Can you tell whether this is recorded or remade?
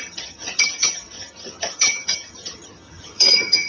remade